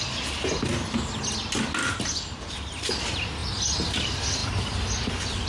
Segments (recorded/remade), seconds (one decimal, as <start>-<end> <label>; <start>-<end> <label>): 0.0-1.8 recorded; 1.8-2.9 remade; 2.9-3.4 recorded; 3.4-4.0 remade; 4.0-5.5 recorded

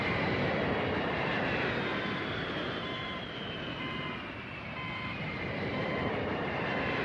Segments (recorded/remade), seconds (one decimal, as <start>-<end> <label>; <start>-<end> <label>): 0.0-1.9 remade; 1.9-2.8 recorded; 2.8-7.0 remade